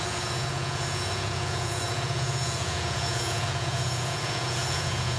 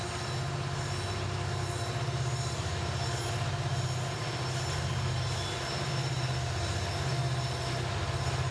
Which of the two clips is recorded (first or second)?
second